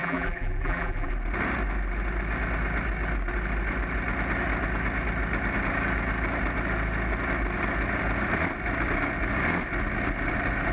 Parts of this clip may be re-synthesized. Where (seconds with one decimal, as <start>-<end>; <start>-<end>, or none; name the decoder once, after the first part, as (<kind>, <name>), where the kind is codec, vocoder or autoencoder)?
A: 0.0-1.1 (vocoder, BigVGAN v2)